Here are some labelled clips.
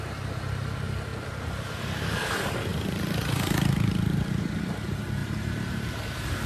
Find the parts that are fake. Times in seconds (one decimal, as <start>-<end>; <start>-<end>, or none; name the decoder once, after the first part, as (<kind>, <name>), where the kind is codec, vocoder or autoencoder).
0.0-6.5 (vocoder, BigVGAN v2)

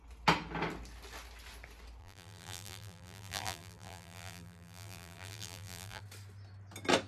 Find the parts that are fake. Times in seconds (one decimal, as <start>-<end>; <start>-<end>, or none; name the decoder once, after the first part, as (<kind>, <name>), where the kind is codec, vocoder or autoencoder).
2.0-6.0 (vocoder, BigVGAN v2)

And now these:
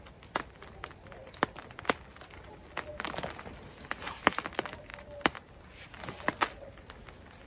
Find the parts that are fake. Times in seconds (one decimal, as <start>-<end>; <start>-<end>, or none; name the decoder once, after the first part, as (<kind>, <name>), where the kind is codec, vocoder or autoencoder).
4.9-5.9 (vocoder, BigVGAN v2)